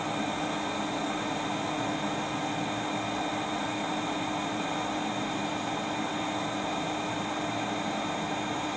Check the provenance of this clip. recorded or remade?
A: recorded